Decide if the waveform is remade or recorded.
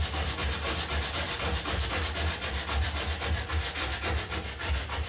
recorded